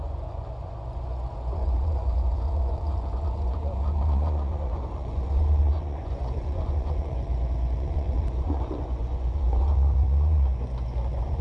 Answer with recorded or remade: remade